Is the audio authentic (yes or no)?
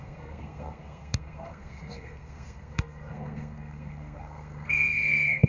no